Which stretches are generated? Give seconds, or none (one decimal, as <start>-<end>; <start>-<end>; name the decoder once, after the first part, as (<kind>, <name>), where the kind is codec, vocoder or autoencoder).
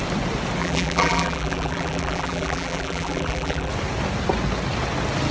0.6-3.7 (vocoder, BigVGAN v2)